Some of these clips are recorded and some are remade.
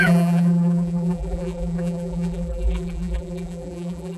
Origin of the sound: remade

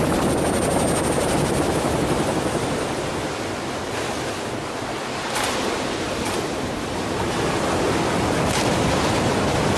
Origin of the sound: remade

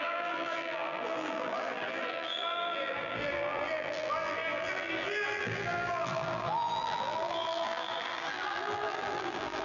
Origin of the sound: remade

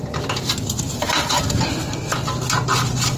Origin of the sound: recorded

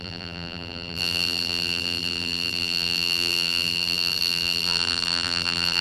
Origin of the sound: remade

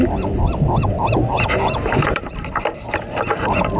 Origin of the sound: remade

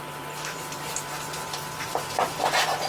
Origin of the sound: remade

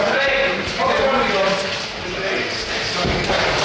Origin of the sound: recorded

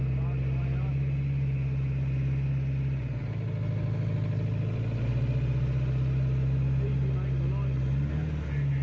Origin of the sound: recorded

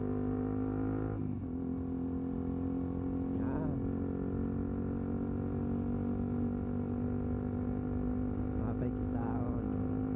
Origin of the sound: recorded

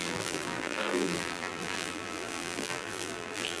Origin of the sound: remade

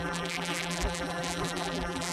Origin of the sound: remade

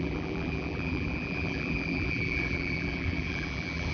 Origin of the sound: remade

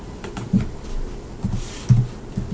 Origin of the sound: remade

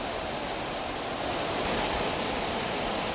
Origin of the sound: recorded